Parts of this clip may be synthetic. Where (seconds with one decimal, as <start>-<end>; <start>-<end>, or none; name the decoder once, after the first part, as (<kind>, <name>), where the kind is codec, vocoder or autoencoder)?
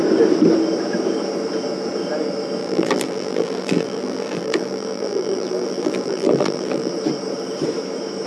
2.6-6.9 (vocoder, BigVGAN v2)